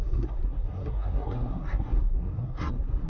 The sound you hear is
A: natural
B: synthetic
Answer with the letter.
B